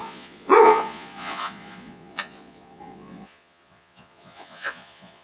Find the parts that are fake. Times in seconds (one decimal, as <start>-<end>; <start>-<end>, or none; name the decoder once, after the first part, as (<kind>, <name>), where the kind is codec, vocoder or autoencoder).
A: 0.0-5.2 (vocoder, Vocos)